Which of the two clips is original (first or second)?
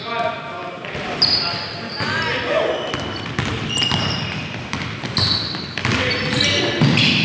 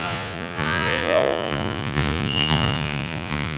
first